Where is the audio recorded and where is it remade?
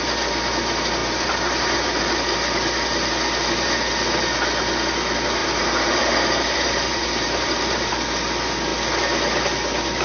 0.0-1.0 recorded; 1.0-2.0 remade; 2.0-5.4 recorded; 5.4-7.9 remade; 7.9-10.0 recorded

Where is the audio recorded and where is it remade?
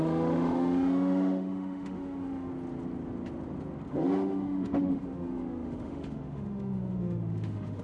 0.0-2.5 remade; 2.5-3.9 recorded; 3.9-7.8 remade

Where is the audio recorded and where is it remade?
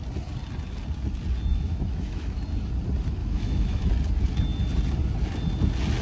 0.0-1.5 recorded; 1.5-2.4 remade; 2.4-3.2 recorded; 3.2-3.9 remade; 3.9-6.0 recorded